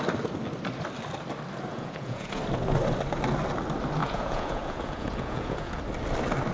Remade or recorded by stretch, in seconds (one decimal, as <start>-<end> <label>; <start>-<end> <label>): 0.0-1.7 recorded; 1.7-2.4 remade; 2.4-4.0 recorded; 4.0-5.8 remade; 5.8-6.5 recorded

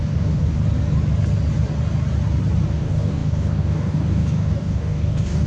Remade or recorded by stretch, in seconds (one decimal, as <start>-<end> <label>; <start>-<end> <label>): 0.0-0.6 remade; 0.6-2.7 recorded; 2.7-5.5 remade

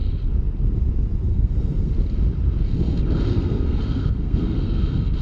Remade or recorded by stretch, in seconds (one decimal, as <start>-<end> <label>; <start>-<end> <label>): 0.0-1.3 recorded; 1.3-1.9 remade; 1.9-3.3 recorded; 3.3-4.8 remade; 4.8-5.2 recorded

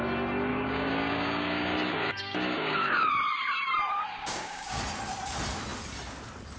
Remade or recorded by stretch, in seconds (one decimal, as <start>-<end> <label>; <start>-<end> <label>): 0.0-0.5 recorded; 0.5-3.1 remade; 3.1-4.2 recorded; 4.2-4.8 remade; 4.8-6.6 recorded

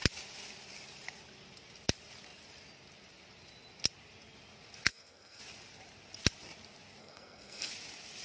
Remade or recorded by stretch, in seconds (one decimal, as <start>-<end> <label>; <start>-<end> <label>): 0.0-4.9 recorded; 4.9-5.4 remade; 5.4-7.0 recorded; 7.0-7.7 remade; 7.7-8.2 recorded

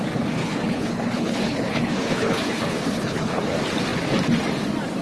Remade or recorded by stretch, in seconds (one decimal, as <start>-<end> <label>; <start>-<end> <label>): 0.0-0.4 recorded; 0.4-3.4 remade; 3.4-5.0 recorded